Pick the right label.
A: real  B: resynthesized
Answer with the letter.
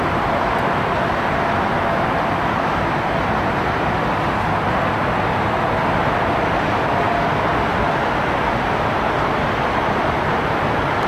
A